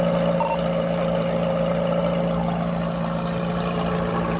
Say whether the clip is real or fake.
real